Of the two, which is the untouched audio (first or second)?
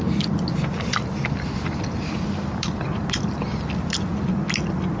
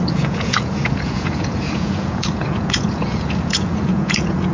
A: first